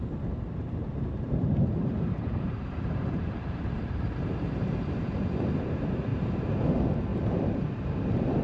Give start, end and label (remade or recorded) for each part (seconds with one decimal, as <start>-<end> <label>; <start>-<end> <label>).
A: 0.0-0.8 recorded; 0.8-5.3 remade; 5.3-6.1 recorded; 6.1-6.6 remade; 6.6-7.1 recorded; 7.1-7.9 remade; 7.9-8.4 recorded